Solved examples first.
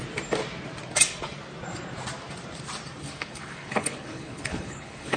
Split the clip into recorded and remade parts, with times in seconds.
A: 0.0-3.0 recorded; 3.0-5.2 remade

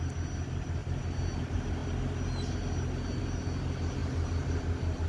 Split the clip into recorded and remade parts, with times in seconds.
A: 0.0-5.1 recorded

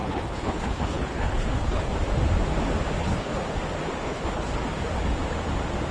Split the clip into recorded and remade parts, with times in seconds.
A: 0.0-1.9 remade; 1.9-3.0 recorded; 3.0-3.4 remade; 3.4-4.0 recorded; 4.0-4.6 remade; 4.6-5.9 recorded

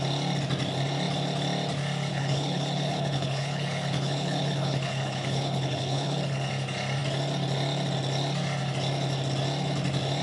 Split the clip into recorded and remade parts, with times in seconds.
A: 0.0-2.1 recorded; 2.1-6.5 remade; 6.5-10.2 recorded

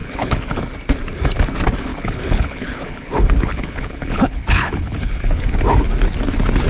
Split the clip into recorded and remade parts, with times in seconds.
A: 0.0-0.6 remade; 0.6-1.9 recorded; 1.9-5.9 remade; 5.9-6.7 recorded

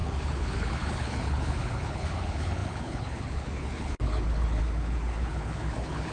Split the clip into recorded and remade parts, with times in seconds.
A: 0.0-6.1 remade